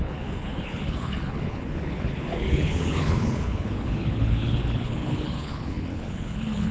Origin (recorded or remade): remade